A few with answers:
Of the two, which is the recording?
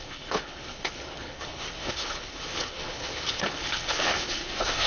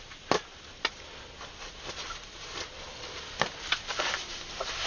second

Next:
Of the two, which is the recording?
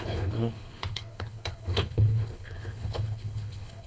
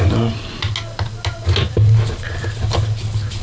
second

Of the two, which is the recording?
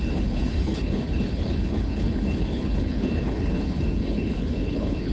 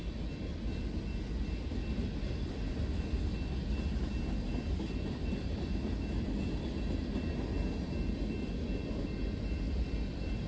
second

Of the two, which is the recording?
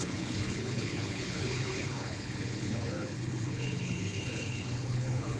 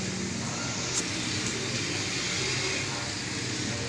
second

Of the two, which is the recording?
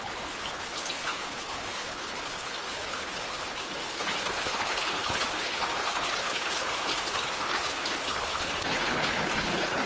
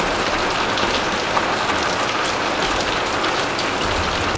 second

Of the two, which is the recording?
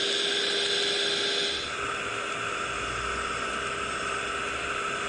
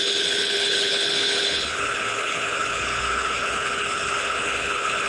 first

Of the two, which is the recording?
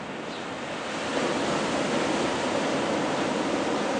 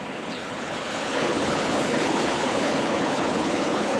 first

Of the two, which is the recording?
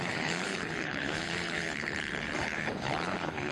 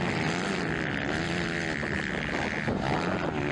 second